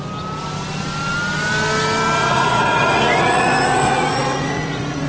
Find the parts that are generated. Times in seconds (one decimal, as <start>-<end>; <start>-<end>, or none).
2.2-5.1